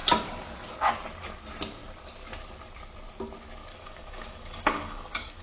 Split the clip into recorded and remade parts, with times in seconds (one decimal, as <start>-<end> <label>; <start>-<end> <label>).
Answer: 0.0-3.7 recorded; 3.7-5.4 remade